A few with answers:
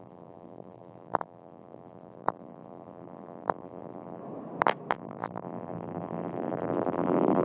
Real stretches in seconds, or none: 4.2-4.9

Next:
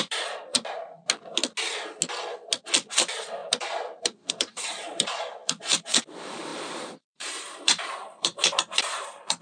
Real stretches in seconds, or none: 1.0-2.9

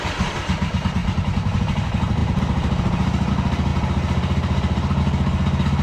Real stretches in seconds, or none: 0.0-1.0; 1.6-2.2; 3.3-3.7; 5.0-5.8

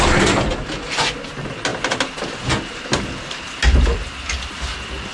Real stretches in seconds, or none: 0.0-5.1